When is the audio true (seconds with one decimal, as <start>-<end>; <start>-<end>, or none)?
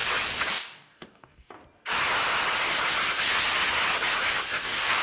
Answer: 0.0-0.5; 1.6-4.6